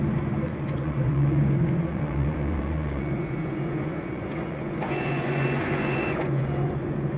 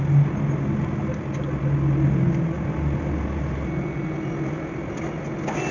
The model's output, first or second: first